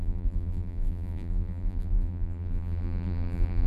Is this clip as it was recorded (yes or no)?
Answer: no